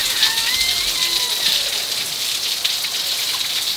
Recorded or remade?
recorded